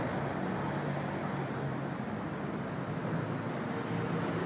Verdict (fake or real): real